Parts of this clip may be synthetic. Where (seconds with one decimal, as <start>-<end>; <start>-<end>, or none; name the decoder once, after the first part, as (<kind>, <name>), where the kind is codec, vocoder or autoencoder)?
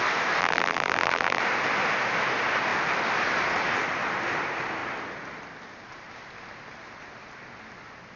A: 0.4-1.4 (vocoder, BigVGAN v2)